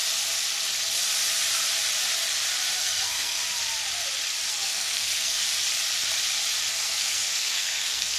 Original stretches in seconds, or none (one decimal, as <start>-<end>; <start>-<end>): 0.0-2.8; 3.4-4.5; 5.5-6.7